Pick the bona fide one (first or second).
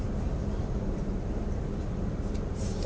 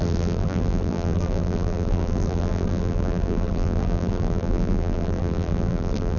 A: first